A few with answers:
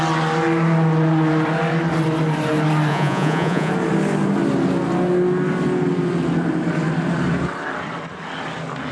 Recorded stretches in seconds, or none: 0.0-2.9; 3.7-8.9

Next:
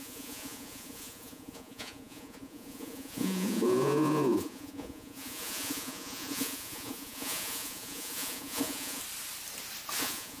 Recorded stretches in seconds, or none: 9.0-10.0

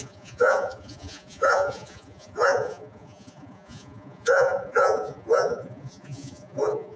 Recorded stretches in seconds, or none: none

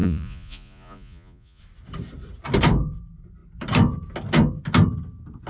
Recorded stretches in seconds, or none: 1.6-5.5